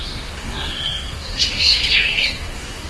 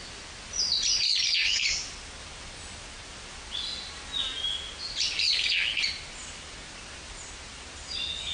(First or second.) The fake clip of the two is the first